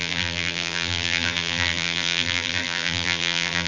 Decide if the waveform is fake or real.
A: fake